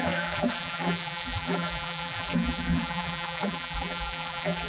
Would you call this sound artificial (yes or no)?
yes